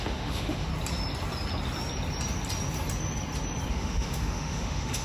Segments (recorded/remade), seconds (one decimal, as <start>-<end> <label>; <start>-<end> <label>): 0.0-0.7 remade; 0.7-3.7 recorded; 3.7-5.0 remade